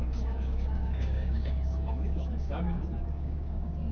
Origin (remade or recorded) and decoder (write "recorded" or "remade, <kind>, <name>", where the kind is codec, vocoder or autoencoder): remade, codec, DAC